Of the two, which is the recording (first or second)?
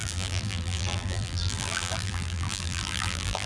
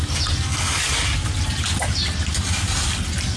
second